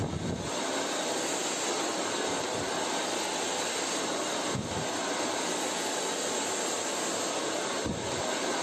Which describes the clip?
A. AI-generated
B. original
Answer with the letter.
B